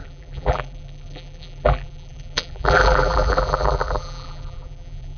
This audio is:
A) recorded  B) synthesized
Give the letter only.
B